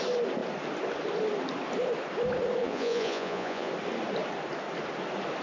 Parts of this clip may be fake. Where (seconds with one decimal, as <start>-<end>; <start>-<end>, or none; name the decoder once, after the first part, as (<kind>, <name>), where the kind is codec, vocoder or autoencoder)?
2.6-3.7 (vocoder, Vocos)